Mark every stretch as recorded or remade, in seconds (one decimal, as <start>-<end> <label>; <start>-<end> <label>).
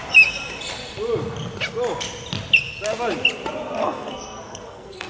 0.0-3.8 recorded; 3.8-5.1 remade